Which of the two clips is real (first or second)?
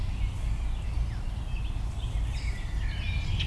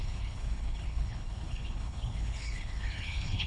first